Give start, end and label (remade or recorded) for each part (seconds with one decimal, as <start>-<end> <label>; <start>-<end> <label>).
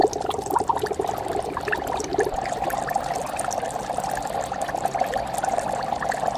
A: 0.0-6.4 recorded